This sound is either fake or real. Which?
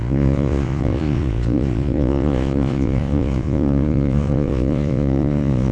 fake